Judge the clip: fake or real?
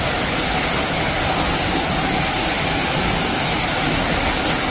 real